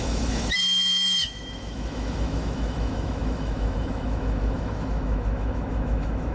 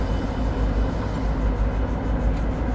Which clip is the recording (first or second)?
second